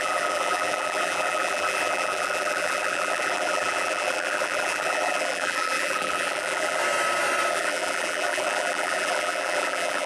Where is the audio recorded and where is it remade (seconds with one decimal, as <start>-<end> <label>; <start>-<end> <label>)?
0.0-6.8 remade; 6.8-7.5 recorded; 7.5-10.1 remade